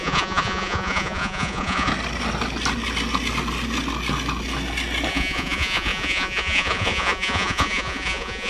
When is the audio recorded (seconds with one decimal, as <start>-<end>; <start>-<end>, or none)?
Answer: 1.9-5.1